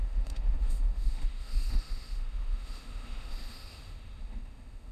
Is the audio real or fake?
fake